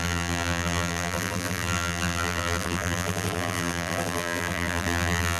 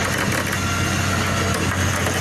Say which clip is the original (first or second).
second